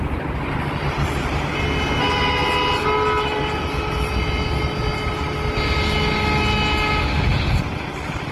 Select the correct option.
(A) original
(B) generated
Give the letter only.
A